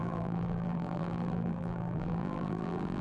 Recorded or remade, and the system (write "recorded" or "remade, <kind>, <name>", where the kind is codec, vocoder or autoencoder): remade, vocoder, BigVGAN v2